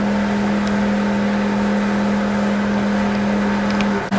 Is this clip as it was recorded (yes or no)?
yes